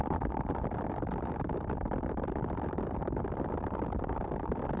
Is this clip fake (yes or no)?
yes